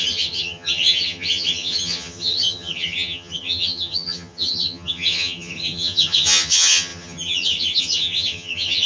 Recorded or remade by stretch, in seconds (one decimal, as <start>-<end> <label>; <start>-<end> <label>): 0.0-8.9 remade